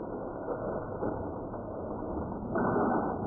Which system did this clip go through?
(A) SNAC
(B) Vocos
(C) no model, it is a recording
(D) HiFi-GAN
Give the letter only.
C